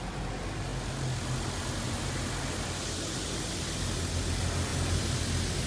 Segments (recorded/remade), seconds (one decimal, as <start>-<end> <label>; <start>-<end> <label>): 0.0-5.7 recorded